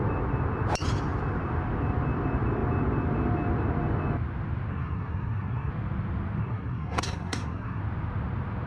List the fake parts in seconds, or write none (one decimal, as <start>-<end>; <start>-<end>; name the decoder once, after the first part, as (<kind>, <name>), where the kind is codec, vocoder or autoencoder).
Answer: 4.7-5.7 (codec, SNAC); 6.4-7.8